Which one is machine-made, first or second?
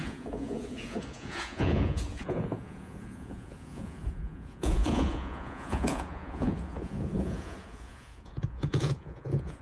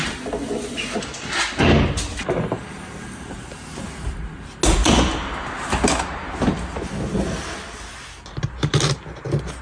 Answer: first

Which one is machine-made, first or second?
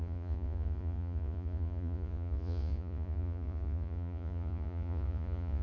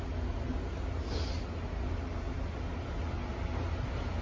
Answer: first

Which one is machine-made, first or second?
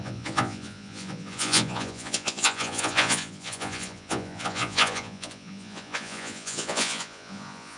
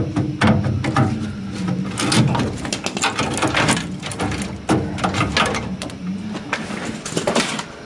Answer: first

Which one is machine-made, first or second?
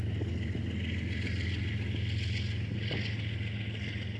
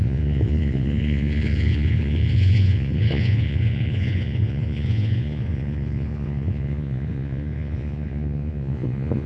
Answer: second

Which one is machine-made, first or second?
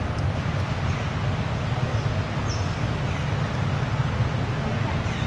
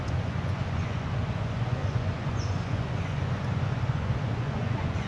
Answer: second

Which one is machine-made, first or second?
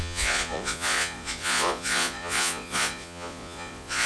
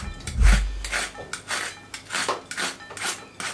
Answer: first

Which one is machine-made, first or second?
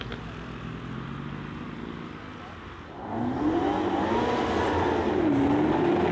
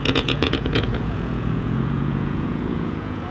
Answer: second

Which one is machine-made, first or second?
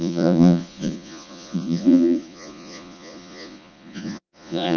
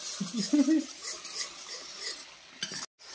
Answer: first